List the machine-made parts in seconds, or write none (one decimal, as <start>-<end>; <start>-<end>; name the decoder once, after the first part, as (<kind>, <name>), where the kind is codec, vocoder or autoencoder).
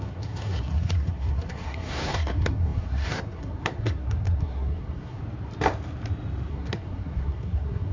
0.0-5.2 (codec, SNAC); 6.5-7.9